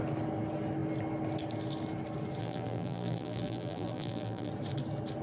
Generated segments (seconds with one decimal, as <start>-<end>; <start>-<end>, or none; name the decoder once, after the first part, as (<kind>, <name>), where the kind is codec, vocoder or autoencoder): 2.4-4.5 (vocoder, BigVGAN v2)

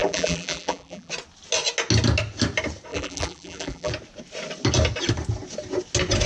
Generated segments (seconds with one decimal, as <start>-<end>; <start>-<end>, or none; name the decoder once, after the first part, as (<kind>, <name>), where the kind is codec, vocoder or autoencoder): 0.0-1.1 (vocoder, BigVGAN v2); 2.9-3.9

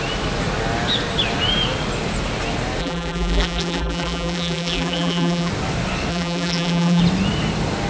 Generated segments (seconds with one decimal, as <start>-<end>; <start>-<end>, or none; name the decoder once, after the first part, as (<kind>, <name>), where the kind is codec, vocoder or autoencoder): 2.8-5.5 (vocoder, BigVGAN v2); 6.1-7.0

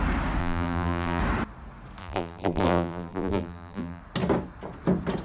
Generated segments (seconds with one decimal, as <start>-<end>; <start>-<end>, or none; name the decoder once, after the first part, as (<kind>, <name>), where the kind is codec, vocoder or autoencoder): 0.4-1.2 (vocoder, BigVGAN v2); 2.0-4.0

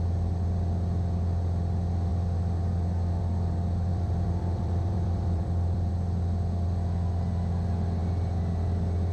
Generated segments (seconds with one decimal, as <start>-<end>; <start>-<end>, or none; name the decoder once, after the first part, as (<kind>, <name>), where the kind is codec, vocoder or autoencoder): 3.9-5.9 (vocoder, BigVGAN v2)

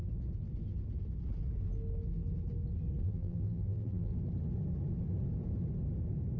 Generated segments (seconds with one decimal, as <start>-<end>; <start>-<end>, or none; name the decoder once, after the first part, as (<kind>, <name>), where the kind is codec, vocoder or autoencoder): 3.0-4.1 (vocoder, BigVGAN v2)

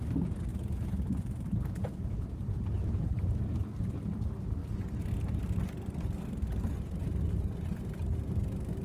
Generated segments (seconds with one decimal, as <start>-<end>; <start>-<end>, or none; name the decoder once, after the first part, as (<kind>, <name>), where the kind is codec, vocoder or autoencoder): 0.5-3.4 (vocoder, BigVGAN v2); 4.6-5.4